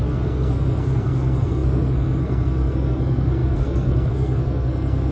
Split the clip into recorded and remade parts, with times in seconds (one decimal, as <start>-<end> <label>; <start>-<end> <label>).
0.0-5.1 remade